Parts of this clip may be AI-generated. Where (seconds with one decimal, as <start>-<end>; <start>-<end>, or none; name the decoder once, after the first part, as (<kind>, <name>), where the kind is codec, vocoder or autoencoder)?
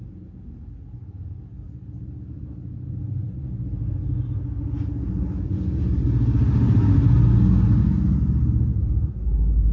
1.5-4.1 (vocoder, BigVGAN v2)